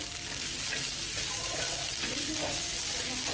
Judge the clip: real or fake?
real